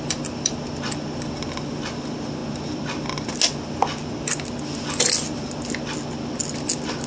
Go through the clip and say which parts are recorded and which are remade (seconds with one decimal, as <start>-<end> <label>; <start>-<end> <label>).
0.0-7.1 recorded